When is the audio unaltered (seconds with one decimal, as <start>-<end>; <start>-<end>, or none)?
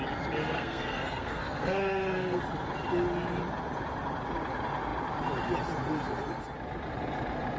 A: 0.0-0.4; 2.4-7.6